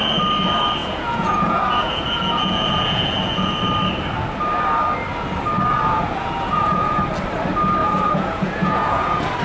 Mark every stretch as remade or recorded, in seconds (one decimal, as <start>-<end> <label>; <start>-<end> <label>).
0.0-0.8 recorded; 0.8-3.5 remade; 3.5-5.7 recorded; 5.7-7.0 remade; 7.0-7.8 recorded; 7.8-9.4 remade